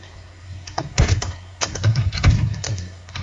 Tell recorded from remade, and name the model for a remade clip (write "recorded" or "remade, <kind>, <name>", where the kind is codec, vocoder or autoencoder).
remade, codec, SNAC